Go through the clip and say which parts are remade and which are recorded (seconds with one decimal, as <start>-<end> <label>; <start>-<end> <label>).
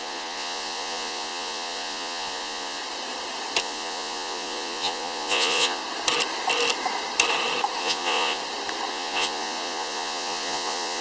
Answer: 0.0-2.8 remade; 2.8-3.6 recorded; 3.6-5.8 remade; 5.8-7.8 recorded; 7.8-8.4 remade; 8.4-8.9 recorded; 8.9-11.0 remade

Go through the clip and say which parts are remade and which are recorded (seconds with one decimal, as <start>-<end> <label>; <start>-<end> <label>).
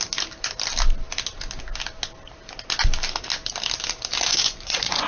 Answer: 0.0-4.3 recorded; 4.3-5.1 remade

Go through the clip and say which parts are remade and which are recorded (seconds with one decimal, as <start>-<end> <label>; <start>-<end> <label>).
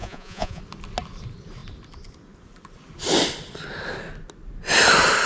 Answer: 0.0-0.6 remade; 0.6-5.3 recorded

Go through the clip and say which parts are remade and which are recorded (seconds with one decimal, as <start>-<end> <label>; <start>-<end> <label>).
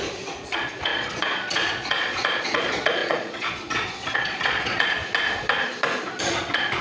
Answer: 0.0-5.0 remade; 5.0-6.2 recorded; 6.2-6.8 remade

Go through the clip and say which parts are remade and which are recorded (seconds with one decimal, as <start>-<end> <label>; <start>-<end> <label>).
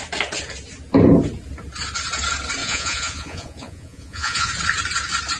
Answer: 0.0-2.6 recorded; 2.6-4.5 remade; 4.5-5.4 recorded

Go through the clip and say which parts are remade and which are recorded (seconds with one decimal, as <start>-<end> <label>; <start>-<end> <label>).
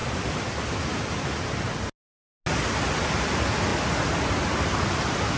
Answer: 0.0-5.4 recorded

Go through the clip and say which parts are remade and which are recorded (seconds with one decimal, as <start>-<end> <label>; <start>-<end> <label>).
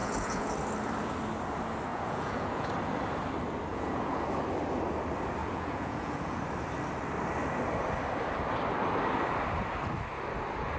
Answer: 0.0-0.5 remade; 0.5-1.9 recorded; 1.9-2.7 remade; 2.7-3.7 recorded; 3.7-4.2 remade; 4.2-5.4 recorded; 5.4-6.4 remade; 6.4-10.8 recorded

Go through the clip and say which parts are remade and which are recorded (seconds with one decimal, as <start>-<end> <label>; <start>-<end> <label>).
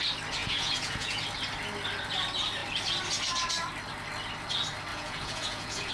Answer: 0.0-0.4 recorded; 0.4-1.2 remade; 1.2-4.9 recorded; 4.9-5.9 remade